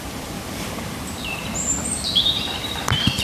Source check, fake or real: fake